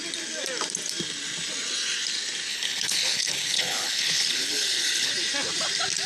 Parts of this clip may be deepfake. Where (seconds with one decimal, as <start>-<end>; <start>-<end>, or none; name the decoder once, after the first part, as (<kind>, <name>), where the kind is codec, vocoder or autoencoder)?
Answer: 2.5-5.1 (codec, HILCodec)